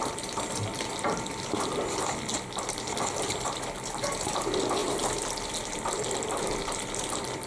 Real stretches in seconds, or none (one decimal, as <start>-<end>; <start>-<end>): 0.0-7.5

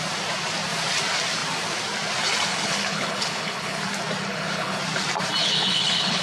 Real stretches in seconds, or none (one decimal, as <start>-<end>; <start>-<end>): 0.0-2.5; 3.8-4.3; 4.8-5.4